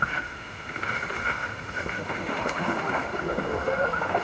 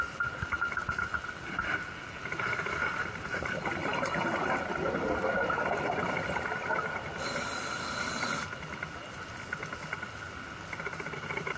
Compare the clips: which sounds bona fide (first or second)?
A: second